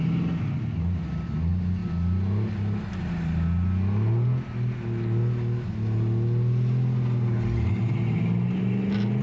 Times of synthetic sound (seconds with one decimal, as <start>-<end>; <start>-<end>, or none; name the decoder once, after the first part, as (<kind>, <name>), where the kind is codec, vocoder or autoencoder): none